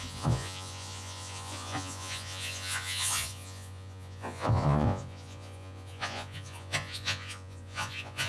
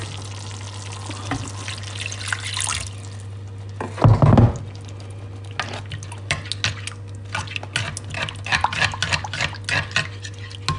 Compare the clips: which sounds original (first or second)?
second